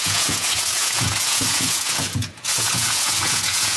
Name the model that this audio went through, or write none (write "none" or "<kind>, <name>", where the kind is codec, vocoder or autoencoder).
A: vocoder, Vocos